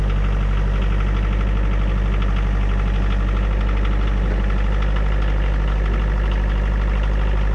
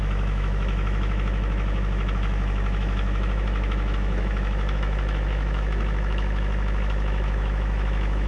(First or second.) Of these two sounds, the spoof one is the second